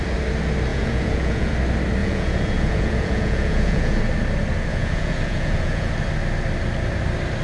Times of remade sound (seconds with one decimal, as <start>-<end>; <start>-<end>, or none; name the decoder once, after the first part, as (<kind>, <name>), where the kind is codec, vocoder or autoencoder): 0.7-1.5 (vocoder, Vocos); 2.0-4.0; 4.7-5.9